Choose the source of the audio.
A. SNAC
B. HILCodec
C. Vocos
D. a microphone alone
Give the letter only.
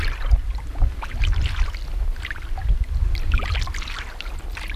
D